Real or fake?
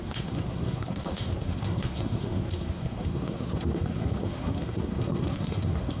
fake